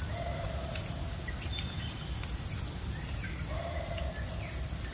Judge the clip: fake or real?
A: real